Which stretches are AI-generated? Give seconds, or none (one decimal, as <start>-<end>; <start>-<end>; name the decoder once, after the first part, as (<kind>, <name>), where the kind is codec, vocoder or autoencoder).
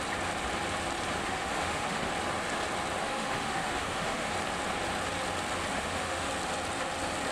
1.2-2.1 (autoencoder, DAC-VAE); 3.0-4.3; 5.7-6.3